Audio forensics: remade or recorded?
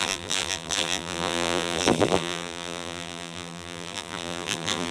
remade